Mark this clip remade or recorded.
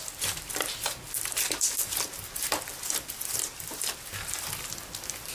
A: remade